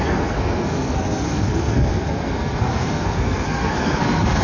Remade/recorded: remade